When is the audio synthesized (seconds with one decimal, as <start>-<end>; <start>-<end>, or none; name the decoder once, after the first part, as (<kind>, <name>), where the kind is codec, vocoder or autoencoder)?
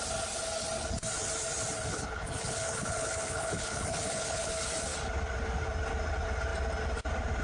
1.9-4.5 (codec, HILCodec)